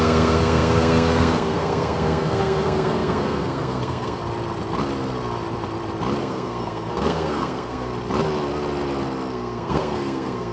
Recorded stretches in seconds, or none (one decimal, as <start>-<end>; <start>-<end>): 4.2-6.2; 7.9-9.3